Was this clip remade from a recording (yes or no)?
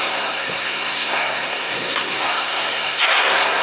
yes